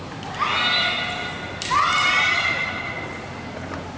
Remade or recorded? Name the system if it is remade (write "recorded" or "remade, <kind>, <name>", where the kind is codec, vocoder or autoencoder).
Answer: recorded